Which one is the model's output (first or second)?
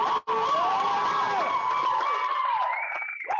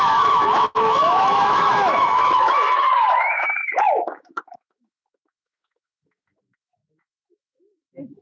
second